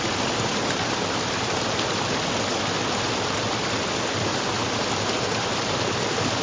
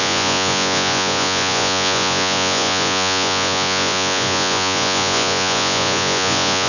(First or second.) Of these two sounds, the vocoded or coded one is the second